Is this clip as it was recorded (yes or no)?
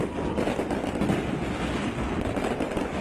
yes